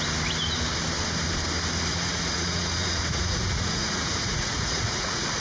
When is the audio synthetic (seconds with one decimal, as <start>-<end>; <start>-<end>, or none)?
1.9-5.4

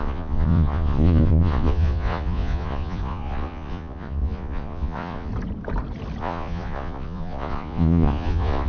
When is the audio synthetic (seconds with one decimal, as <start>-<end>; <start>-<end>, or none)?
0.0-5.3; 6.2-8.7

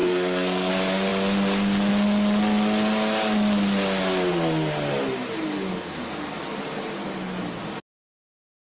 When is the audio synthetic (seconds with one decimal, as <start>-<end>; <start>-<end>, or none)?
0.0-0.7

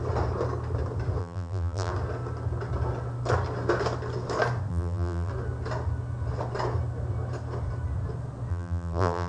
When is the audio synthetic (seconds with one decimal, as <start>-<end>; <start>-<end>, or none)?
1.2-1.9; 4.7-5.3; 8.5-9.3

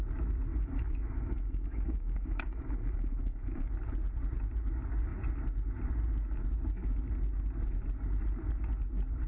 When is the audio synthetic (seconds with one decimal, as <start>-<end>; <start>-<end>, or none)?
0.5-3.7